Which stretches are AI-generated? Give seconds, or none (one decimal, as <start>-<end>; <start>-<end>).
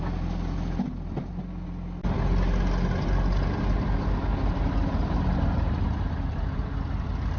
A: none